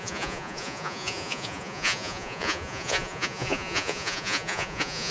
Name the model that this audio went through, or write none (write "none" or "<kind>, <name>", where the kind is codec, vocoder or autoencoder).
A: vocoder, Vocos